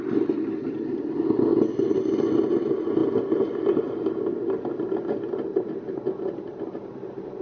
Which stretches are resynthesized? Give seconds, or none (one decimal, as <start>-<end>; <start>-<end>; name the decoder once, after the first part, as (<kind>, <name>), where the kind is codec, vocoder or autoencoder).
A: 1.5-2.1 (vocoder, BigVGAN v2); 3.0-4.7